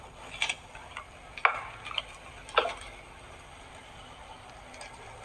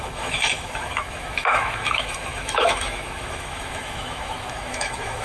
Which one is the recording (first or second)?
first